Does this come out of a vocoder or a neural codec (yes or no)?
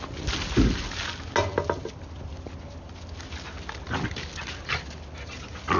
no